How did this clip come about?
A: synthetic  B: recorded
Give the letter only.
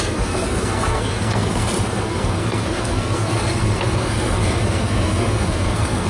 A